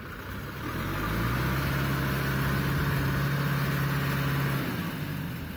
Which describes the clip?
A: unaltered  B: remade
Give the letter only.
A